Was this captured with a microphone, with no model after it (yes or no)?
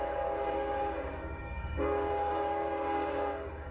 no